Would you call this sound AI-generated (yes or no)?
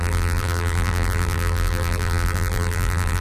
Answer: yes